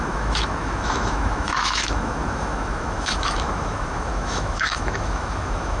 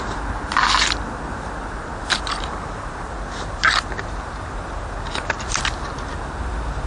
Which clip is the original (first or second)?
second